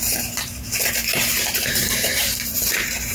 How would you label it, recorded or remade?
remade